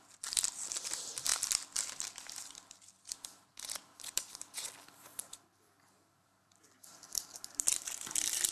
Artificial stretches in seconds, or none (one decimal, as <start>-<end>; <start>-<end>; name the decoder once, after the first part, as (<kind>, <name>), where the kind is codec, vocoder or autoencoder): 0.0-5.1 (vocoder, BigVGAN v2); 6.7-8.5